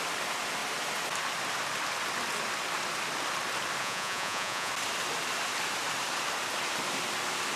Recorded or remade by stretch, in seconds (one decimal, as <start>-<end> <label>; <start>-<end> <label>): 0.0-3.8 recorded; 3.8-4.7 remade; 4.7-7.6 recorded